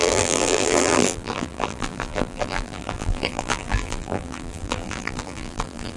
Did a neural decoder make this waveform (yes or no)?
yes